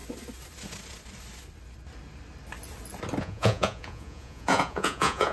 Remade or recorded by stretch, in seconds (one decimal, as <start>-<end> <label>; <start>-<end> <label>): 0.0-3.2 recorded; 3.2-5.3 remade